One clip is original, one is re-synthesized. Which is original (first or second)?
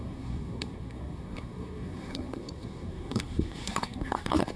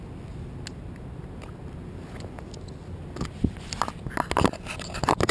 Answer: second